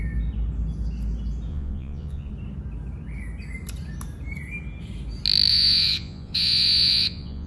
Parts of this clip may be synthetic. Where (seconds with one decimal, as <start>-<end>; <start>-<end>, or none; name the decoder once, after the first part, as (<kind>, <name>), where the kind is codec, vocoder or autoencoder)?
1.5-2.3 (vocoder, Vocos); 5.5-7.5